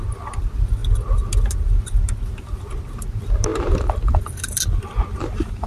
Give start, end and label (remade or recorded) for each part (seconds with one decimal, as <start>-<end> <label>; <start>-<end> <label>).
0.0-5.7 recorded

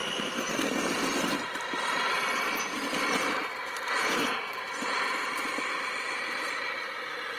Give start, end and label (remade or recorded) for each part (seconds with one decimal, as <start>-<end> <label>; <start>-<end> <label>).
0.0-4.0 recorded; 4.0-4.6 remade; 4.6-7.4 recorded

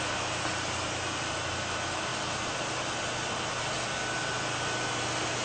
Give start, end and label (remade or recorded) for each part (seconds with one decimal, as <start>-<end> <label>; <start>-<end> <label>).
0.0-5.4 recorded

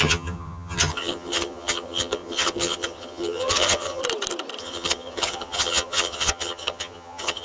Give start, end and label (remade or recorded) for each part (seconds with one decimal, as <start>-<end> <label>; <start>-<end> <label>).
0.0-4.0 remade; 4.0-4.6 recorded; 4.6-7.4 remade

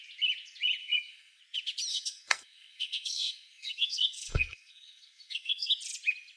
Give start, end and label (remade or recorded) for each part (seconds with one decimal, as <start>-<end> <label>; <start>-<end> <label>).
0.0-0.8 recorded; 0.8-1.4 remade; 1.4-1.9 recorded; 1.9-5.7 remade; 5.7-6.4 recorded

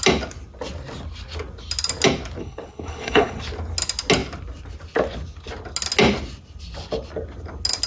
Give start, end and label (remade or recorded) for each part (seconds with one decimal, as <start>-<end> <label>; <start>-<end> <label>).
0.0-2.4 recorded; 2.4-3.4 remade; 3.4-7.9 recorded